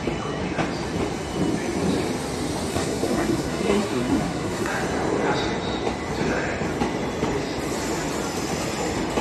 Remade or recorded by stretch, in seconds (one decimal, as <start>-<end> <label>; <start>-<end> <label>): 0.0-2.7 recorded; 2.7-4.8 remade; 4.8-9.2 recorded